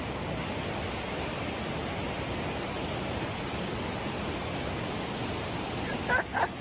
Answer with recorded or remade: recorded